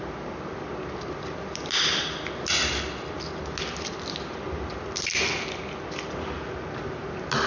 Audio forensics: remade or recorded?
recorded